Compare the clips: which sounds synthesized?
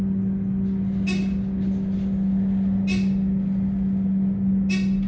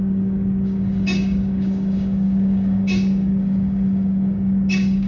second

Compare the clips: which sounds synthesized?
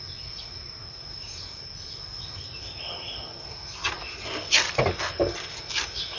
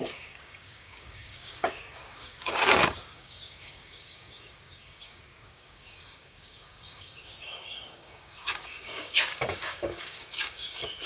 second